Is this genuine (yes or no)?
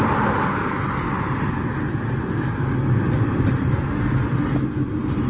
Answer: yes